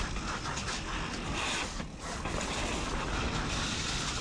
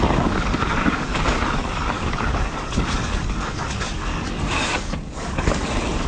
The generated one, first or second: second